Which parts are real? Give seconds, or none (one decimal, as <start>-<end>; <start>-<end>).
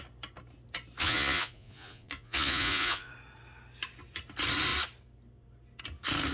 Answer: 0.0-1.0; 3.1-6.3